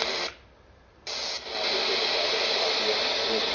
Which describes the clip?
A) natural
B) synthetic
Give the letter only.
A